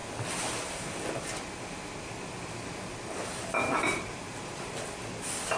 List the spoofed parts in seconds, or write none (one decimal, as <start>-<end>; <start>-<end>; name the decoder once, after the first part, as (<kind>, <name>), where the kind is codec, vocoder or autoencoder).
none